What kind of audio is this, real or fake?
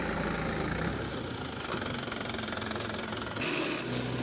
real